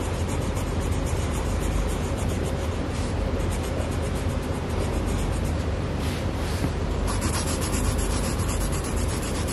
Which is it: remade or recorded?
remade